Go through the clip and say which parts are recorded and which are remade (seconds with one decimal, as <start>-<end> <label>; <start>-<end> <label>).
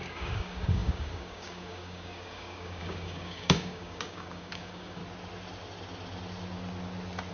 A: 0.0-5.0 remade; 5.0-7.3 recorded